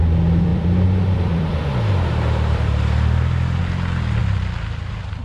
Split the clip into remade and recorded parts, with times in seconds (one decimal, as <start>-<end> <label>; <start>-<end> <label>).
0.0-0.5 recorded; 0.5-3.6 remade; 3.6-4.2 recorded; 4.2-5.2 remade